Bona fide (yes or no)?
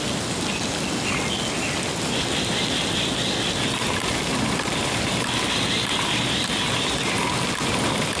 yes